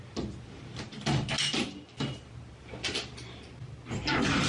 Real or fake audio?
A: real